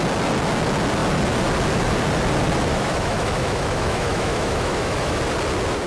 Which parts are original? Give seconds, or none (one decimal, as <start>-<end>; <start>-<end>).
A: 0.0-2.7; 5.2-5.9